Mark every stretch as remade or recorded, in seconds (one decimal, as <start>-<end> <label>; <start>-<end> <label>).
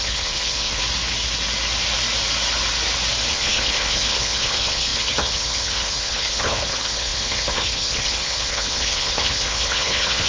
0.0-0.8 remade; 0.8-3.3 recorded; 3.3-10.3 remade